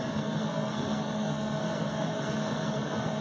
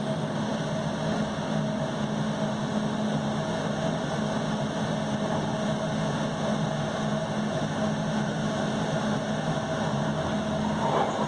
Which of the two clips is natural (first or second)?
second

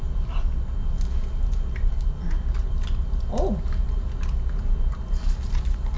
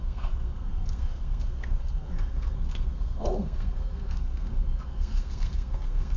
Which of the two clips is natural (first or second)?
first